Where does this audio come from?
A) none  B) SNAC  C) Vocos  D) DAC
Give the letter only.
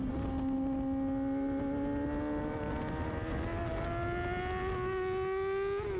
A